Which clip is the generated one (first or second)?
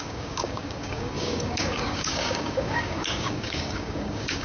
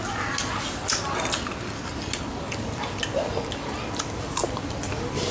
first